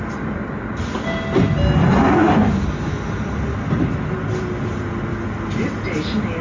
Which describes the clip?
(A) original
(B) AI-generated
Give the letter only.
A